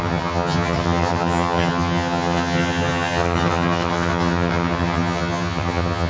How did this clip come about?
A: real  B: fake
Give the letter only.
B